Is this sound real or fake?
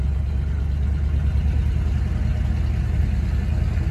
real